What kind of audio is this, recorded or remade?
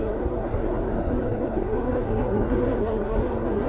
remade